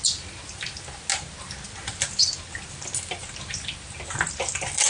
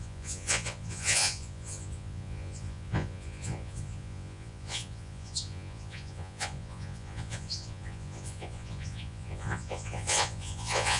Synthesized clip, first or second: second